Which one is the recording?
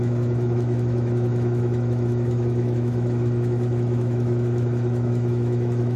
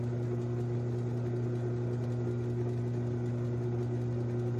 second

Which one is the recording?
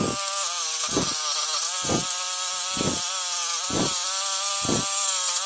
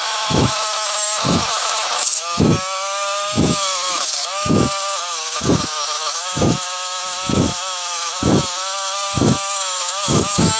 first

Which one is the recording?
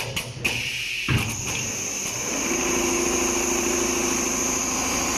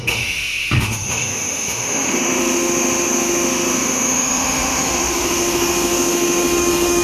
first